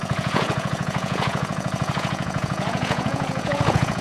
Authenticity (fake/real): fake